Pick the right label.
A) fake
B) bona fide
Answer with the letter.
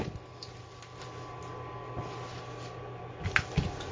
B